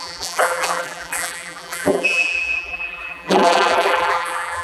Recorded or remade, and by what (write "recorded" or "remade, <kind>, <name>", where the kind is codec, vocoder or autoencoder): remade, vocoder, BigVGAN v2